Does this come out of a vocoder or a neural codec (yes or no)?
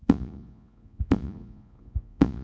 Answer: yes